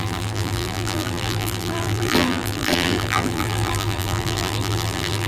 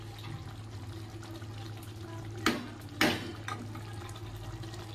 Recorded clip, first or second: second